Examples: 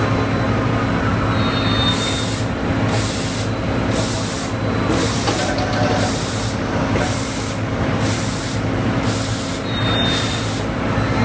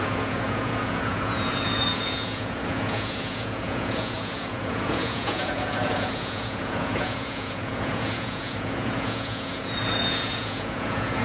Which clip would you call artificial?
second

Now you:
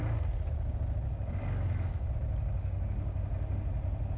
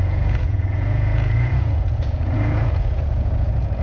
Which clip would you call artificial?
second